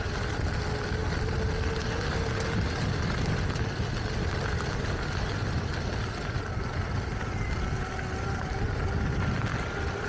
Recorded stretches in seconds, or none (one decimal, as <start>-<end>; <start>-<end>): 0.0-10.1